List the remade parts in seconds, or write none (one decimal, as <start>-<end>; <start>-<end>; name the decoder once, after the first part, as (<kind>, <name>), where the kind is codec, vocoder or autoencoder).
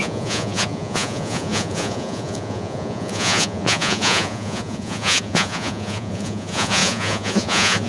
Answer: 0.0-7.9 (vocoder, Vocos)